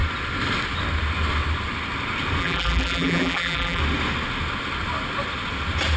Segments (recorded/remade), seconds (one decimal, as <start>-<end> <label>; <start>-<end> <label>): 0.0-2.4 recorded; 2.4-3.8 remade; 3.8-6.0 recorded